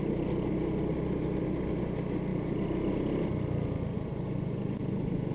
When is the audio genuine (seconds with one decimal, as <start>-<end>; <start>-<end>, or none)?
0.0-3.9